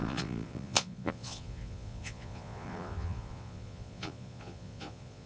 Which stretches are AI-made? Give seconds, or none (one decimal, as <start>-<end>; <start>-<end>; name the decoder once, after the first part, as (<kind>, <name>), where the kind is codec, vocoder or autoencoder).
0.0-5.3 (vocoder, Vocos)